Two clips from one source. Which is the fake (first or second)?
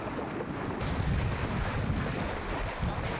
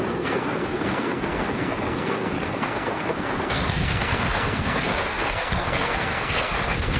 second